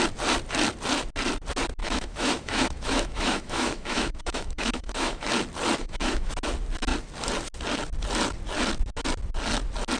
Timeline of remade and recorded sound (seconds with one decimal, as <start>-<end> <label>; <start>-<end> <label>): 0.0-1.8 recorded; 1.8-5.2 remade; 5.2-5.8 recorded; 5.8-6.3 remade; 6.3-10.0 recorded